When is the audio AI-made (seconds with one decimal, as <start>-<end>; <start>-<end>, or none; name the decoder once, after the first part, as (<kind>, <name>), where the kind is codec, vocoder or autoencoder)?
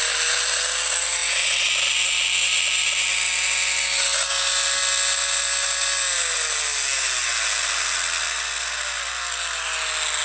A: none